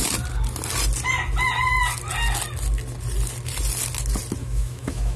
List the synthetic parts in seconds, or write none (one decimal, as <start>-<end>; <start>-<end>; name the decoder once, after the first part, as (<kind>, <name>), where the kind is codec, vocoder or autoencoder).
4.4-5.2 (autoencoder, DAC-VAE)